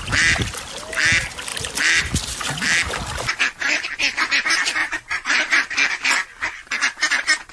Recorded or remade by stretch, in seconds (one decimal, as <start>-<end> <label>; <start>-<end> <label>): 0.0-4.8 recorded; 4.8-5.3 remade; 5.3-7.5 recorded